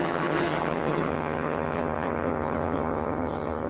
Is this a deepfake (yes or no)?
yes